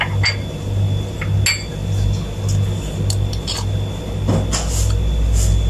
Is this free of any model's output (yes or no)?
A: yes